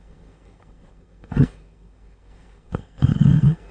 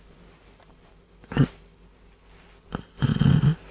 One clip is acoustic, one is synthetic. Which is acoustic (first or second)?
second